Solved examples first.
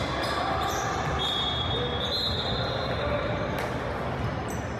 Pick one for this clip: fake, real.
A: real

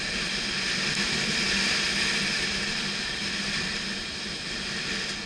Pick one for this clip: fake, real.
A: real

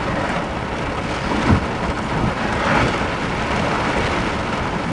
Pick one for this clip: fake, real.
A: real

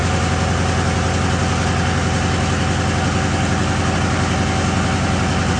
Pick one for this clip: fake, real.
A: real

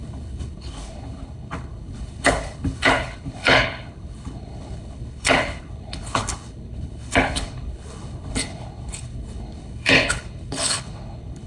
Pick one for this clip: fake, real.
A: fake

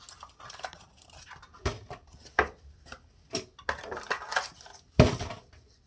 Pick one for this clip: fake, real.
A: real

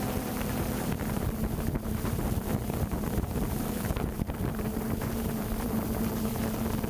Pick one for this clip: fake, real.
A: fake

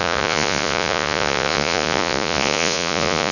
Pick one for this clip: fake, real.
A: fake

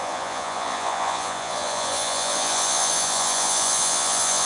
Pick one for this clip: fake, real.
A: fake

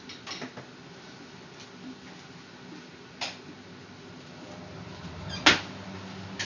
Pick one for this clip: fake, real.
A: real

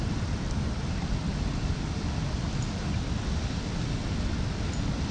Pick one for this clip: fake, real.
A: real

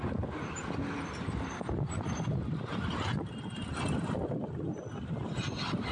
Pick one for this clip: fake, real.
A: real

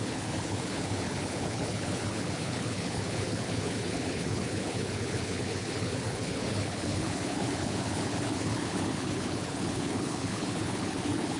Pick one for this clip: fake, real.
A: fake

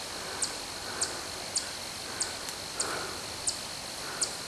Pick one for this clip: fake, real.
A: real